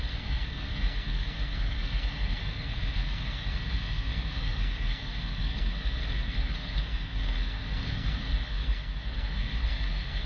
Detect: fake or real fake